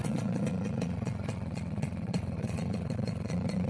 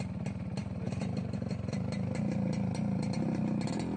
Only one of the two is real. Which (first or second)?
second